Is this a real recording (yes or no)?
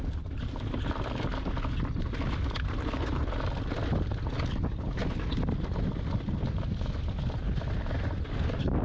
yes